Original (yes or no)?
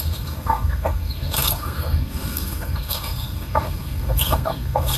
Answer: no